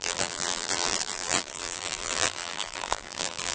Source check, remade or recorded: remade